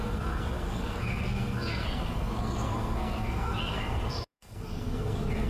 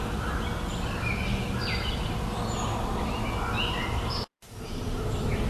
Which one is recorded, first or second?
second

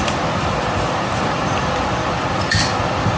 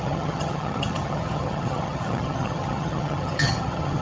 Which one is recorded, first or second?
first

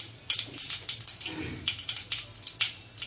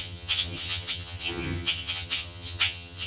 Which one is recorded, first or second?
first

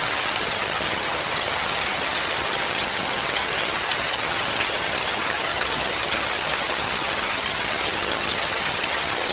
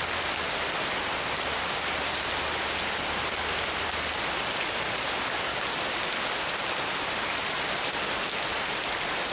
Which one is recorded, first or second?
second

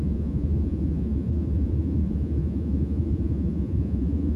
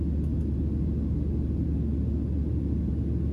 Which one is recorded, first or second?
second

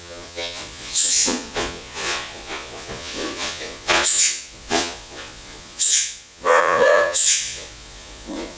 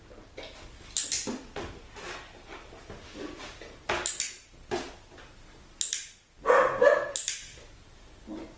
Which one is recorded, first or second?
second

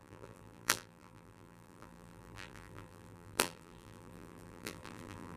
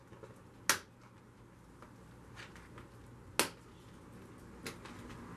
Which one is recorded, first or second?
second